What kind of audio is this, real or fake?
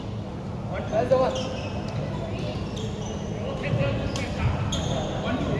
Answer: real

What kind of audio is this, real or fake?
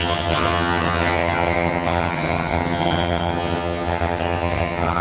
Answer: fake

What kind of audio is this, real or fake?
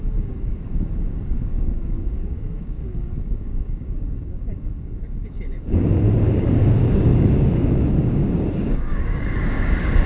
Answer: fake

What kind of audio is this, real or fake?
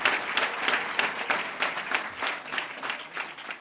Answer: real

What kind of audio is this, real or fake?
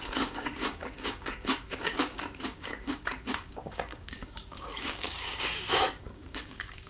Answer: fake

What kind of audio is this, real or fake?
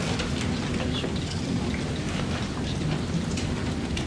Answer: real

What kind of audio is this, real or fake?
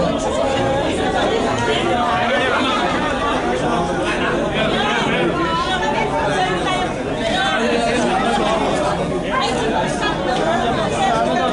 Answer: real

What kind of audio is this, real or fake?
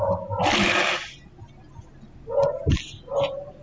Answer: real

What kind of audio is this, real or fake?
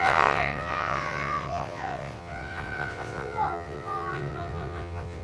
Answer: fake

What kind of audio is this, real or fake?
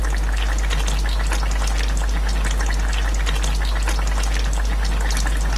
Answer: real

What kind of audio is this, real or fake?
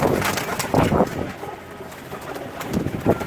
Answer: real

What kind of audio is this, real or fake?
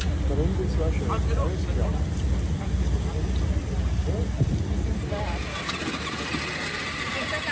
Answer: real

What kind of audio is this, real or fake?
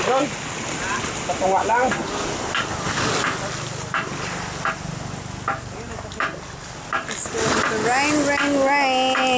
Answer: real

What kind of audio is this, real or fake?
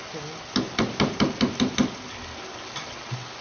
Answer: real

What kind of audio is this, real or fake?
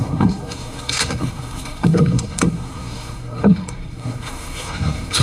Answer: fake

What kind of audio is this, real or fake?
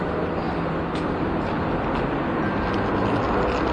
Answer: real